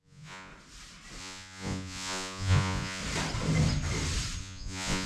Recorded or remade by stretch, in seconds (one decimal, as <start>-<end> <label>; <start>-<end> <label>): 0.0-0.5 remade; 0.5-1.2 recorded; 1.2-3.0 remade; 3.0-4.4 recorded; 4.4-5.1 remade